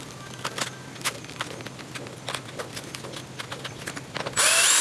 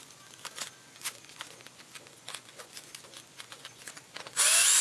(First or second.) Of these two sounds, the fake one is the second